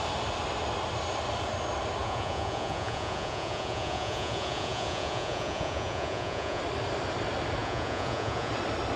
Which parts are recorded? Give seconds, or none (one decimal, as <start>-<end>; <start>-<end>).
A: 0.0-2.0; 6.6-7.6; 8.5-9.0